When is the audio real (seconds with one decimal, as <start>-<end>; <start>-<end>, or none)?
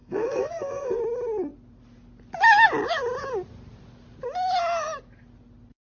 1.0-5.9